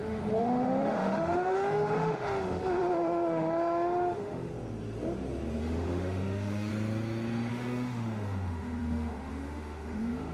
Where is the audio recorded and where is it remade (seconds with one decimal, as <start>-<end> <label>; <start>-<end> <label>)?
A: 0.0-4.5 remade; 4.5-5.6 recorded; 5.6-6.7 remade; 6.7-7.5 recorded; 7.5-10.3 remade